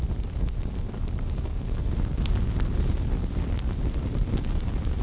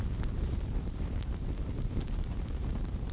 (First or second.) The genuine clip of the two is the first